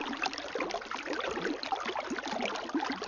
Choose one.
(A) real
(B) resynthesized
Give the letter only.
A